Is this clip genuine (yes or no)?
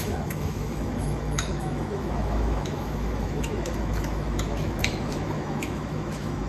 no